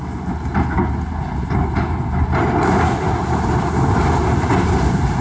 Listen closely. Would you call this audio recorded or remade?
recorded